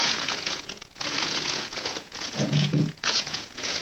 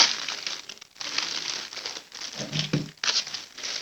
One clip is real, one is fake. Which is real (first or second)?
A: second